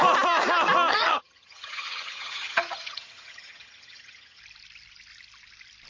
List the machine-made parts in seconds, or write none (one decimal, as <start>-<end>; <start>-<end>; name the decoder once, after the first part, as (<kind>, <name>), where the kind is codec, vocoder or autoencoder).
0.9-4.4 (vocoder, HiFi-GAN)